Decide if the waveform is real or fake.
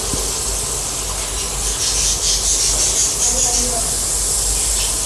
real